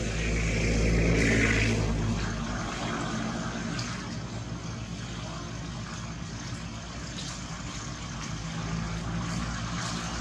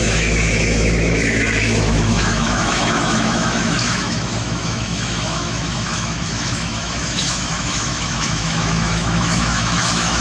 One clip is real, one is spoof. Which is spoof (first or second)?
second